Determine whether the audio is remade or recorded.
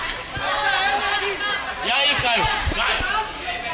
recorded